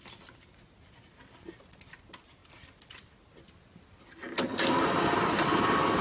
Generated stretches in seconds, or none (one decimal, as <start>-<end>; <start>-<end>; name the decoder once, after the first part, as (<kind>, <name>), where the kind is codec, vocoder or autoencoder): none

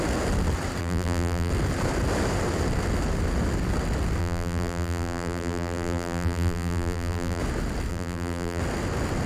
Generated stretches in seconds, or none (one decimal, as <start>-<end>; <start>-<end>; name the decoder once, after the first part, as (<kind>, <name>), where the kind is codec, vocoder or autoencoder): 0.8-1.5 (vocoder, BigVGAN v2); 4.2-7.4; 7.9-8.6

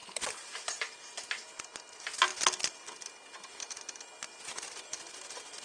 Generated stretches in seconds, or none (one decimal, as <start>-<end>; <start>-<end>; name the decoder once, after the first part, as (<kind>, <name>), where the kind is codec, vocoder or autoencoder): none

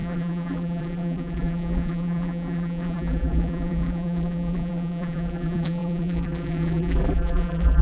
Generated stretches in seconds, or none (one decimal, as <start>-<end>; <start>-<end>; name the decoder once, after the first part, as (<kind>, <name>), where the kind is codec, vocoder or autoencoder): 0.0-7.8 (vocoder, BigVGAN v2)

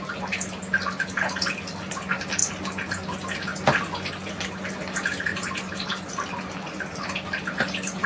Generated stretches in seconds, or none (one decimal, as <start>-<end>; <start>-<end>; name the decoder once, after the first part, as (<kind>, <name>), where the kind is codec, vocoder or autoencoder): 5.3-6.1 (vocoder, BigVGAN v2)

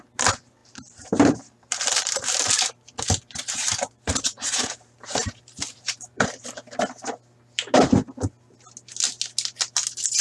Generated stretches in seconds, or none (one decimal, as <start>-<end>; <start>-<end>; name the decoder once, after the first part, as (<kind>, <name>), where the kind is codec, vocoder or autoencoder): 0.6-1.9 (vocoder, BigVGAN v2); 3.6-6.3

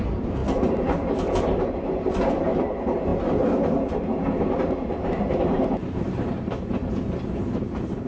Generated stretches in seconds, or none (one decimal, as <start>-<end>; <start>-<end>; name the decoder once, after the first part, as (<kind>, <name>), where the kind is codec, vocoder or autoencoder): 0.0-8.1 (vocoder, BigVGAN v2)